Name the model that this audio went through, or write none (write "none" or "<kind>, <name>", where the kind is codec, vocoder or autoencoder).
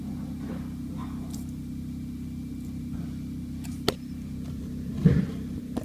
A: none